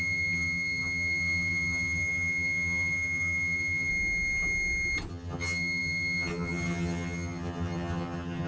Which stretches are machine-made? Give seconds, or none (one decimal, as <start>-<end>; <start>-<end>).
0.0-3.9; 5.1-8.5